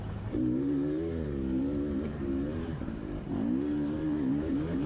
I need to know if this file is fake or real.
fake